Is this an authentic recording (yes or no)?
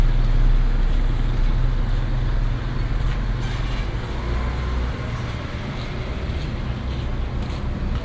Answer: yes